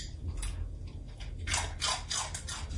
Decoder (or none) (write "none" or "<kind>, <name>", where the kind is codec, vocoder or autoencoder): none